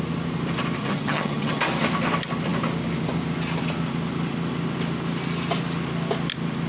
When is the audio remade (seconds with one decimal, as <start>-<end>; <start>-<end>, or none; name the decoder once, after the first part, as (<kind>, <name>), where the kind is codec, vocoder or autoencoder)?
0.8-1.6 (vocoder, HiFi-GAN)